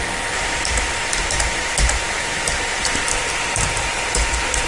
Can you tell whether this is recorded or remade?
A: recorded